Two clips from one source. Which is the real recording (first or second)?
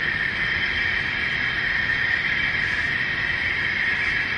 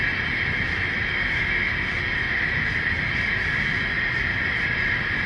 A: second